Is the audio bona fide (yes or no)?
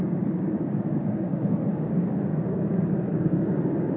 no